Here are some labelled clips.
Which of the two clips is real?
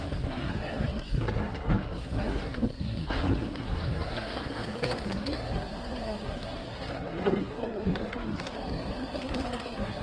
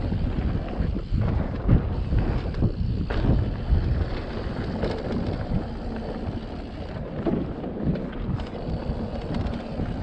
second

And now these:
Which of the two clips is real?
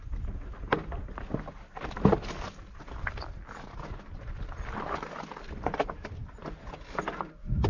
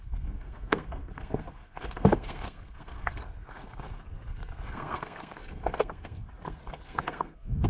first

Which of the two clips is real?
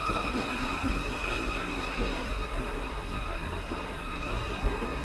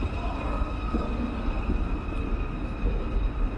second